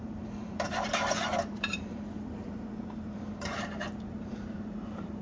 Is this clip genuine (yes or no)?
no